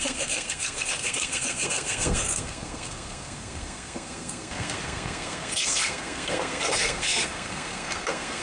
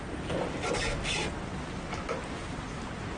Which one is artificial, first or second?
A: first